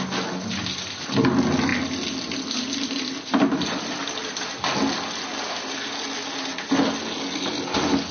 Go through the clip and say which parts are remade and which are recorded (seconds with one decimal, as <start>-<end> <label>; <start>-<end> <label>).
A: 0.0-8.1 recorded